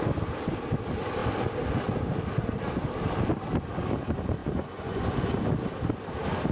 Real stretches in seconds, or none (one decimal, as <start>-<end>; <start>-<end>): 0.0-4.4; 5.1-6.5